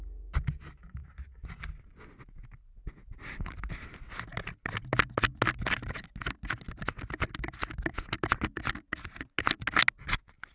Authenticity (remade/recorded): recorded